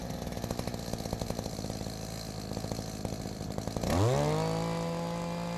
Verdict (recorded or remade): recorded